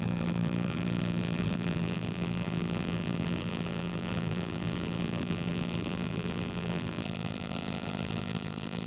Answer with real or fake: fake